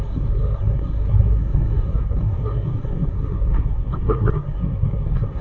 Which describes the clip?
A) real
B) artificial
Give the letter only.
B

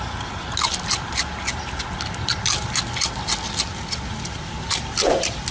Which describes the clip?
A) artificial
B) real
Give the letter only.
B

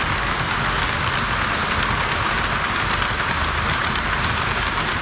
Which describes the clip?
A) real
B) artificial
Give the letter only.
A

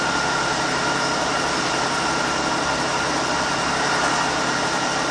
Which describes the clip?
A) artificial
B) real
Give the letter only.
B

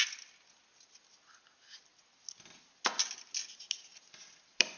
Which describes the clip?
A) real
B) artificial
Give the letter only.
A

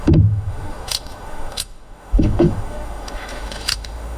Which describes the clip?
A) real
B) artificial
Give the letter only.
B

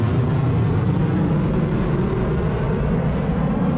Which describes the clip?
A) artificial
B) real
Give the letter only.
B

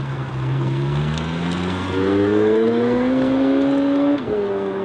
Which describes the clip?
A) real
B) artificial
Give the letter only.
B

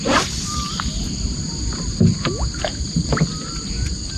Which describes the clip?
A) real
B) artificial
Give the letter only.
A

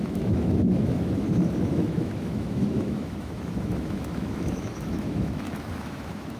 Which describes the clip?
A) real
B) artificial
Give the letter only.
B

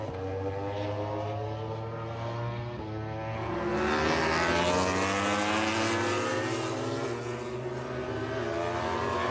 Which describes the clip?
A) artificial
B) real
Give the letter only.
B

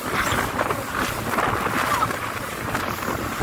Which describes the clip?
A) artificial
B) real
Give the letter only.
B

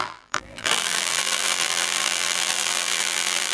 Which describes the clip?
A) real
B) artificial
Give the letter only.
B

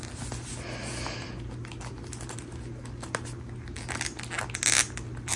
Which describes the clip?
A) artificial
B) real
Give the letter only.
B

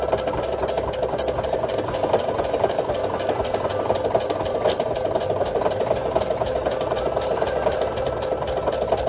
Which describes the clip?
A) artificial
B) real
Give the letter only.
B